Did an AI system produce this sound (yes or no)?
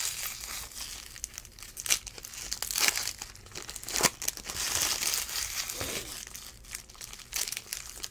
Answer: no